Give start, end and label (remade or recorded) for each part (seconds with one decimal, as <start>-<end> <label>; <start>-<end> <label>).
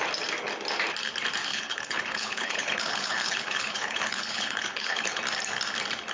0.0-1.5 recorded; 1.5-5.2 remade; 5.2-6.1 recorded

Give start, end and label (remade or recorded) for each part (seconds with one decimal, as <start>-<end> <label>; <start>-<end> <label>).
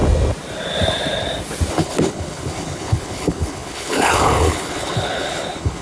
0.0-1.7 recorded; 1.7-5.8 remade